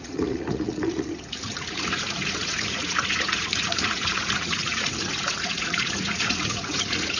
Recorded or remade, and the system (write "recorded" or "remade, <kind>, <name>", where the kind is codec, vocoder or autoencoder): remade, vocoder, Vocos